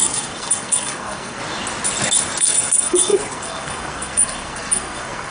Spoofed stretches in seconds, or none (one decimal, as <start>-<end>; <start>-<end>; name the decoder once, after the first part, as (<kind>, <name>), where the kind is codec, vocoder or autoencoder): 0.0-1.4 (codec, SNAC); 2.4-5.3